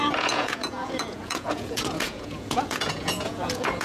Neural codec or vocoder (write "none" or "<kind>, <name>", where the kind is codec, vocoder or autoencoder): vocoder, Vocos